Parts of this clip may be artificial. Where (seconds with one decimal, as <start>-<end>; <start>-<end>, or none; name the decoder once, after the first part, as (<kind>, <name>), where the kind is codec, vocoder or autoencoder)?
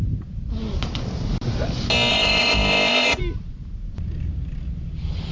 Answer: 2.1-3.2 (codec, ZipCodec)